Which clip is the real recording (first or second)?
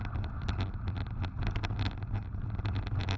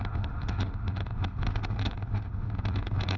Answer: first